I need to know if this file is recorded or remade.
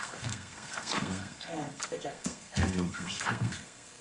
remade